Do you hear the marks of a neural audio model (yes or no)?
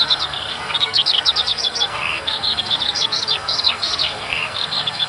yes